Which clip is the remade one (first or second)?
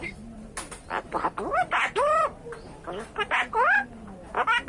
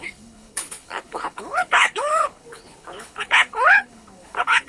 second